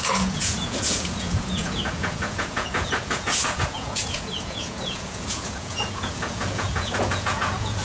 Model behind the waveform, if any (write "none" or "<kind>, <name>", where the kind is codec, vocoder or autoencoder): vocoder, Vocos